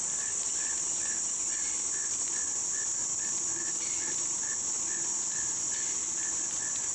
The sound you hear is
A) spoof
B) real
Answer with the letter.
B